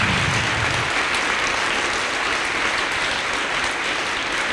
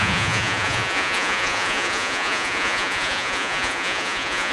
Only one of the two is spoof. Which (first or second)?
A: second